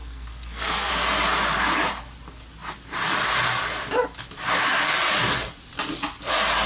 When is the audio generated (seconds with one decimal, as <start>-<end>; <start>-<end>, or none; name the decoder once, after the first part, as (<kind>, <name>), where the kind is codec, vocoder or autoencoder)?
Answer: 0.0-0.9 (codec, SNAC)